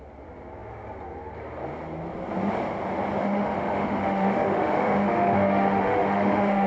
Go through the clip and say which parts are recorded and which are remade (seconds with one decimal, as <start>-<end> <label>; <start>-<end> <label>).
0.0-3.2 recorded; 3.2-6.7 remade